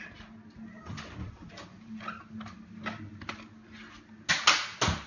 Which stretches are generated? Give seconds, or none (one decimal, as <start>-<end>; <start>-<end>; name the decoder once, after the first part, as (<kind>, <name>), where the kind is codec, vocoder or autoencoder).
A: none